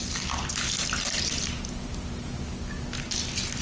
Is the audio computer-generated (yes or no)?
no